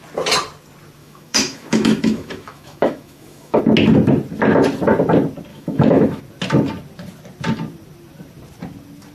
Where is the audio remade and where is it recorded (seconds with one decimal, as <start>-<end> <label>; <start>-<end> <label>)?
0.0-1.0 recorded; 1.0-3.6 remade; 3.6-5.5 recorded; 5.5-6.2 remade; 6.2-9.1 recorded